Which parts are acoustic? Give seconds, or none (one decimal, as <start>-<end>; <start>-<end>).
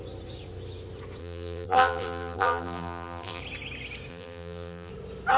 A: 0.0-1.2; 3.4-4.1; 4.9-5.4